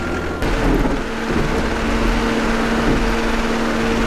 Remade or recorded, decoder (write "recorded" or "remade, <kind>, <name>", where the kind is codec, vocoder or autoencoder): recorded